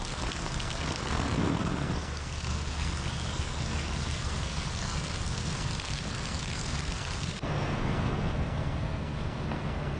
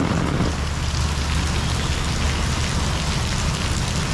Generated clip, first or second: first